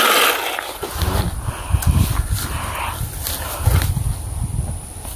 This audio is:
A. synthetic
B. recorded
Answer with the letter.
B